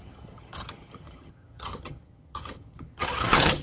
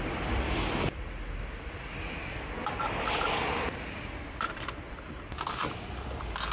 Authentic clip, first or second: second